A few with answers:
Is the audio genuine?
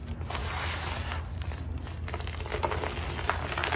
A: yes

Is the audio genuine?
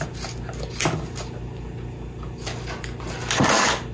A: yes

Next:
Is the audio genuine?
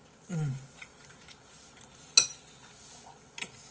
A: yes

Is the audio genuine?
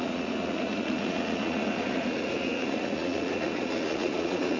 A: no